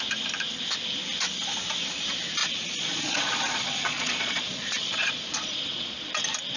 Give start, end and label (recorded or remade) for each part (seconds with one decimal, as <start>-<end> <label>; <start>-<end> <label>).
0.0-2.4 recorded; 2.4-6.1 remade; 6.1-6.6 recorded